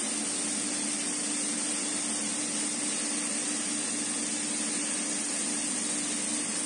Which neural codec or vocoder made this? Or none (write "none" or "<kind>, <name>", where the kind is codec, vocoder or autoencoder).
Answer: none